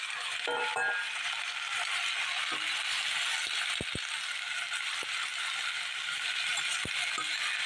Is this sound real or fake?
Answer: real